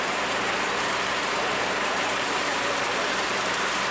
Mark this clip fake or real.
fake